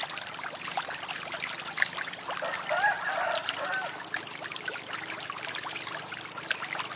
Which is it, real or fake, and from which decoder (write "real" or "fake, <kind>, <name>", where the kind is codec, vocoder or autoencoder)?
real